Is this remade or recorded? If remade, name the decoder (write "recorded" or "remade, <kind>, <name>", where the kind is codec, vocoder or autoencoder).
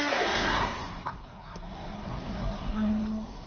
remade, codec, SNAC